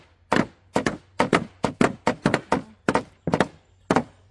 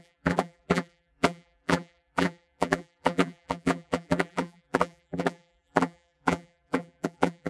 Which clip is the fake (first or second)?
second